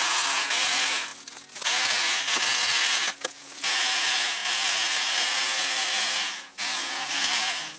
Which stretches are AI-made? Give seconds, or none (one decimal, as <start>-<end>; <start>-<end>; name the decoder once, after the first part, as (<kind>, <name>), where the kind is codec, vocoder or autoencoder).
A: none